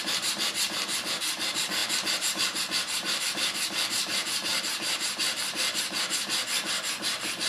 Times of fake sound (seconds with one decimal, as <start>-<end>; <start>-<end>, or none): 0.0-7.5